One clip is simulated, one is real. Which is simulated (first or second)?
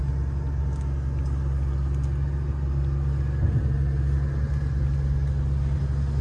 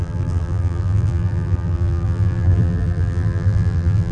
second